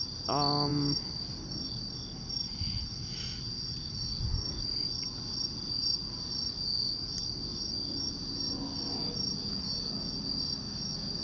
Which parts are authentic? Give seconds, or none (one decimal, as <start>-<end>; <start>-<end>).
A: 0.0-11.2